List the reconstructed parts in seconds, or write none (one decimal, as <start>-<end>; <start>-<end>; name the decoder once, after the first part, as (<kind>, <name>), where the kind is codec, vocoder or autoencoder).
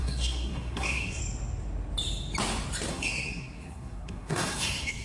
0.0-1.2 (codec, SNAC); 2.9-5.0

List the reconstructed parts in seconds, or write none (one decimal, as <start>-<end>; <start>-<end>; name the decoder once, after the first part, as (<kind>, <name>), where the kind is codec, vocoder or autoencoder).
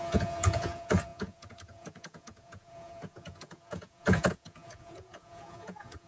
0.0-6.1 (vocoder, Vocos)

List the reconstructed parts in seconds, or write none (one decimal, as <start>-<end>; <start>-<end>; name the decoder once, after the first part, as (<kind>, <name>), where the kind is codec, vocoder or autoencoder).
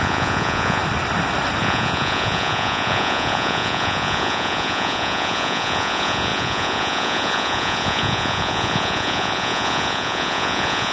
0.0-0.8 (vocoder, Vocos); 1.6-10.9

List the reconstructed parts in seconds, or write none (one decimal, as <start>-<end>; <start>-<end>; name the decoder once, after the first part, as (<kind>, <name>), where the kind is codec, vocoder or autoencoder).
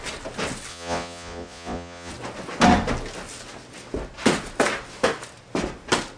0.7-2.1 (vocoder, Vocos)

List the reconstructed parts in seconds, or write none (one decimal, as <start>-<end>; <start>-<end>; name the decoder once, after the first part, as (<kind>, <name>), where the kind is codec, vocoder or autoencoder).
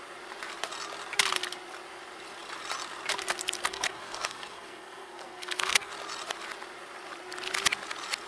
3.6-5.9 (codec, SNAC)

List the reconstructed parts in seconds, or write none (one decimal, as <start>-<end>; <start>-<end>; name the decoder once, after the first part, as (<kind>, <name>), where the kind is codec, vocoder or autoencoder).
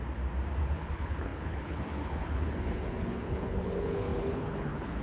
0.6-5.0 (codec, HILCodec)